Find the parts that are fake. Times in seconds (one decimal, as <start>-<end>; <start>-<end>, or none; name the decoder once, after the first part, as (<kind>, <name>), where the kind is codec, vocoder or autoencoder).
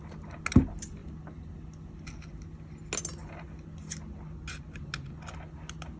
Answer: none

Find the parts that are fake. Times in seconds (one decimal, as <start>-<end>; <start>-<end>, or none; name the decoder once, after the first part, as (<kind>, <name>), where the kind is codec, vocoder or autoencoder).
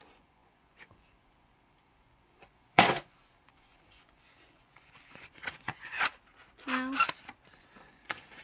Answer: 0.0-6.1 (vocoder, Vocos); 7.5-8.4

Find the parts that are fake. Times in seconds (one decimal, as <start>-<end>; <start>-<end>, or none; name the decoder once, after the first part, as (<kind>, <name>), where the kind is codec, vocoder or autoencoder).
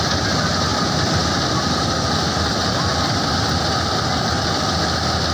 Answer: 0.7-3.9 (vocoder, BigVGAN v2)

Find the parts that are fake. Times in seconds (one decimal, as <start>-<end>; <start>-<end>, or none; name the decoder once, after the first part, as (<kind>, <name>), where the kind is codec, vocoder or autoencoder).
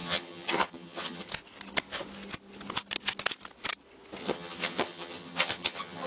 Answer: 0.0-1.3 (vocoder, HiFi-GAN); 4.2-6.1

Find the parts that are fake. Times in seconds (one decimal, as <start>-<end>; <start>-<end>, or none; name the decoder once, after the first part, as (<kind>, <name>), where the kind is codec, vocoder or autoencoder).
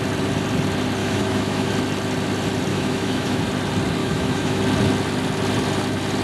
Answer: 1.0-1.7 (autoencoder, DAC-VAE); 2.7-3.4; 4.0-4.6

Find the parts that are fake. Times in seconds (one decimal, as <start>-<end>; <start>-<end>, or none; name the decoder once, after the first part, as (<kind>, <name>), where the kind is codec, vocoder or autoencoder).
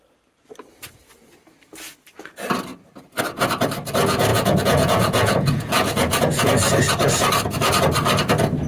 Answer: 4.3-6.5 (vocoder, Vocos)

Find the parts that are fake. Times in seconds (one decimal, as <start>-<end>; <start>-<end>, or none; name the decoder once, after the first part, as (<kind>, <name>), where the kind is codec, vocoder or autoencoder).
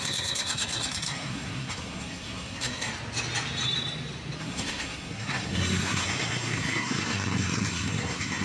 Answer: 0.0-2.9 (codec, SNAC); 4.4-8.4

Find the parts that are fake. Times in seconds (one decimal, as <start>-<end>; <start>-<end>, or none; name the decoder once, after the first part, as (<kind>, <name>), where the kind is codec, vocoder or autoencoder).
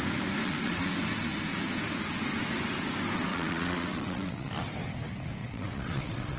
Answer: 0.4-0.9 (vocoder, WaveNeXt); 3.3-4.5; 5.4-6.4